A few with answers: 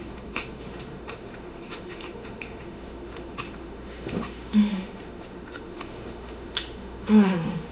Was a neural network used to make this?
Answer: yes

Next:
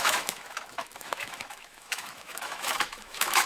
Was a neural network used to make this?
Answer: yes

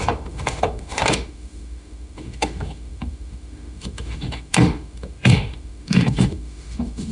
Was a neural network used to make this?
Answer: yes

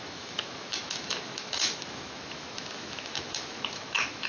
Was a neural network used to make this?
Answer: yes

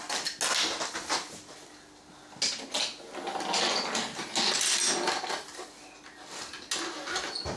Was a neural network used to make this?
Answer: no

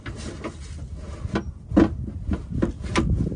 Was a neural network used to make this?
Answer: no